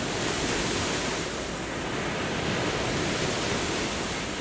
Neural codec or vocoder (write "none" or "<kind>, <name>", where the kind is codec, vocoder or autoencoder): none